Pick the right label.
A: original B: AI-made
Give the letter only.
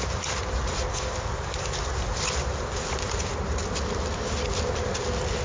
A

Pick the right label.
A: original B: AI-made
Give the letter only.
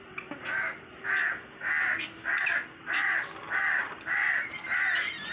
A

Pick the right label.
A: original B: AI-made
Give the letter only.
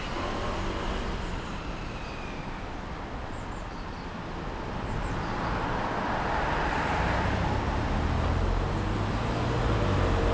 A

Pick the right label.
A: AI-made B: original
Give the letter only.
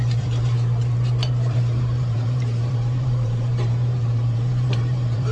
A